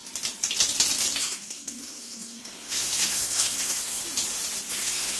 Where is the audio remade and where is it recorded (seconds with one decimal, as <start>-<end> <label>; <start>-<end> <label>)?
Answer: 0.0-1.2 recorded; 1.2-4.0 remade; 4.0-4.7 recorded; 4.7-5.2 remade